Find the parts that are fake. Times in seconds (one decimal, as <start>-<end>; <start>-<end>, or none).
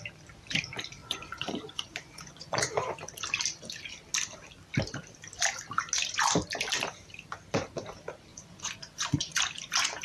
1.0-2.9; 8.3-9.4